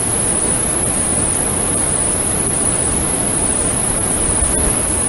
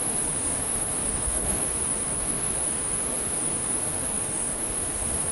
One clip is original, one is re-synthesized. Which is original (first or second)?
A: first